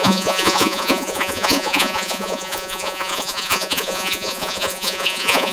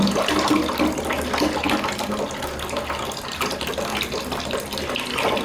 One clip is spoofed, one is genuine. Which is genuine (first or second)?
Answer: second